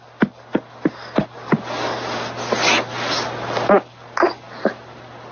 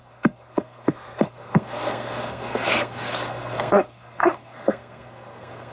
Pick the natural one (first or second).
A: first